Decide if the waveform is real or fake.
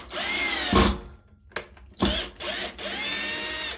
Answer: real